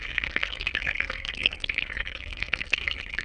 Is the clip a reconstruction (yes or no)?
yes